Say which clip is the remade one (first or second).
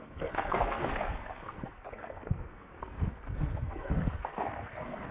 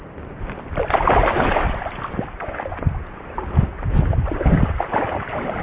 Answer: first